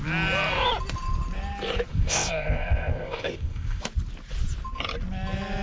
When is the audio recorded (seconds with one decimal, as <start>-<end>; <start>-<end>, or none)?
0.0-1.9; 3.8-5.6